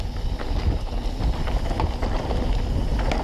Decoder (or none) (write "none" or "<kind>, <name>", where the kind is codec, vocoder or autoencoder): none